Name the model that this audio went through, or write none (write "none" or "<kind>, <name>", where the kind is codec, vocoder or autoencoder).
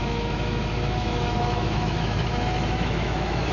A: autoencoder, DAC-VAE